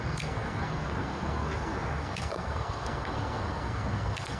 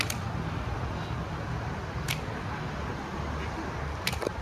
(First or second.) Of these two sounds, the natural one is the second